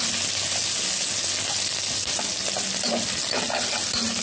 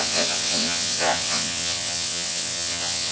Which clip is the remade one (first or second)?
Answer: second